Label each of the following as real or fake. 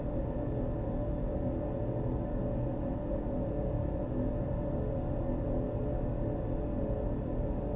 real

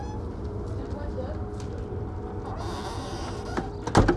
real